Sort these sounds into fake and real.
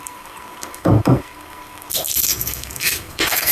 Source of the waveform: fake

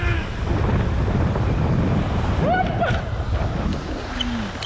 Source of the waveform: real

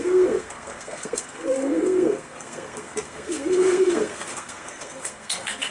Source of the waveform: fake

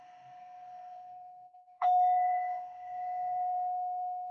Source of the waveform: fake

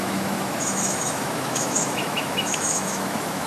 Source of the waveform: fake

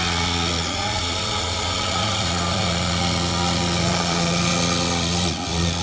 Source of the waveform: fake